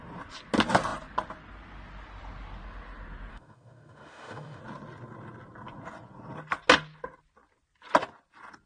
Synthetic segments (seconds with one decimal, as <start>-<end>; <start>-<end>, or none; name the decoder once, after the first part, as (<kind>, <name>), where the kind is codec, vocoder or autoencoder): 3.3-4.6 (autoencoder, DAC-VAE)